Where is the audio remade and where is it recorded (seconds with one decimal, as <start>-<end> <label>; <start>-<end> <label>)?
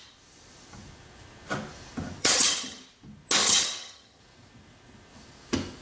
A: 0.0-2.2 recorded; 2.2-2.8 remade; 2.8-3.4 recorded; 3.4-4.2 remade; 4.2-5.8 recorded